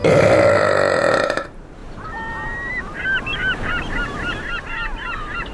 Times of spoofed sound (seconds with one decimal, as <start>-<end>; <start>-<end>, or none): none